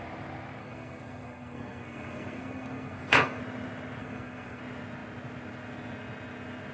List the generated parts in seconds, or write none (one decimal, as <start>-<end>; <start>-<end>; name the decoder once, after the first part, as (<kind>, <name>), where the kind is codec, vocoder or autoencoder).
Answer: 0.6-3.4 (codec, SNAC); 4.0-4.6